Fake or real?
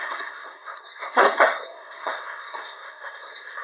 fake